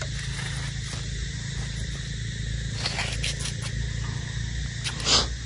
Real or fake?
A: real